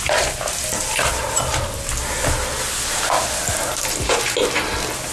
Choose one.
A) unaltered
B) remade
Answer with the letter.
A